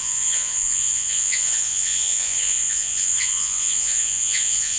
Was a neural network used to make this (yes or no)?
yes